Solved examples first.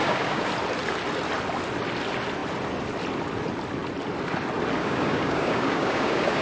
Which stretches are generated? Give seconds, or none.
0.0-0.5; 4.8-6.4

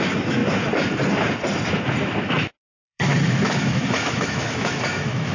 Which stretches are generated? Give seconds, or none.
0.0-0.4; 2.0-5.3

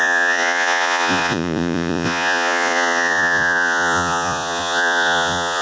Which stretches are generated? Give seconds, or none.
0.0-5.6